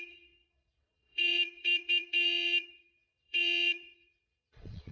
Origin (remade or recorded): remade